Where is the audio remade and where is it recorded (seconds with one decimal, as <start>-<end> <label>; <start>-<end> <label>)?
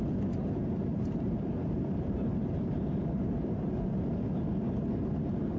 0.0-0.6 recorded; 0.6-4.0 remade; 4.0-5.6 recorded